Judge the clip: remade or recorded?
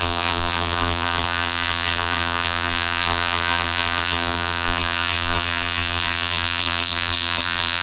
remade